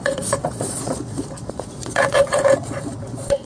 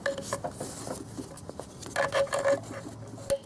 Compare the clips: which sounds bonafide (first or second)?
second